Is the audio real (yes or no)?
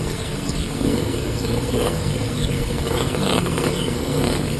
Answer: no